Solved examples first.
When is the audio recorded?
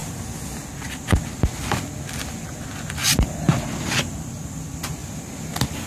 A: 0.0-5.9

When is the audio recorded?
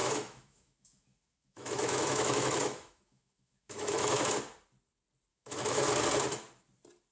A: 4.3-5.3; 5.9-7.1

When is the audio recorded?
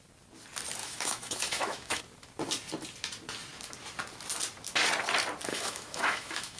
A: 0.0-0.8; 2.0-5.5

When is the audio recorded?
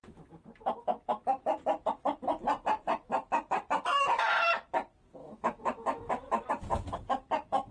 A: 0.0-5.2; 6.5-7.7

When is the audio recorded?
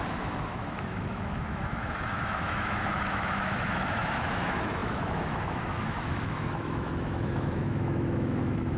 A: none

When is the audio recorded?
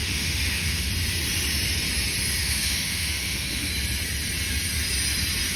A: 0.9-2.4; 3.7-5.6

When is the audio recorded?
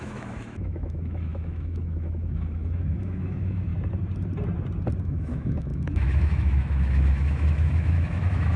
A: 3.7-5.0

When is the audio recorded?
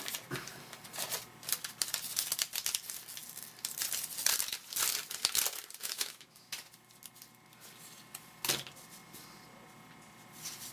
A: 0.0-5.8; 6.5-10.7